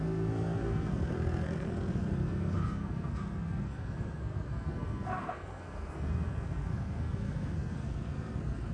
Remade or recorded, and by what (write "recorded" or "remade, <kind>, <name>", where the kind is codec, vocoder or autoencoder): remade, codec, SNAC